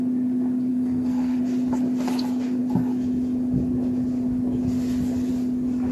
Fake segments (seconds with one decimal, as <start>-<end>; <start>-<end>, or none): 0.7-1.4

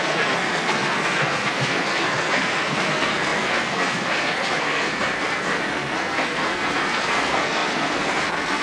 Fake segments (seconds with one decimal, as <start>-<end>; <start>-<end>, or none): 0.0-8.6

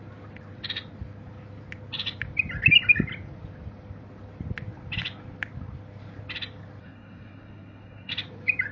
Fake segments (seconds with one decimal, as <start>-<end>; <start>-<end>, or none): 6.8-8.1

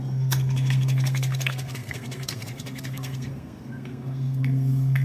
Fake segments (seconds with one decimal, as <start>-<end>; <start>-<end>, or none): 0.0-5.0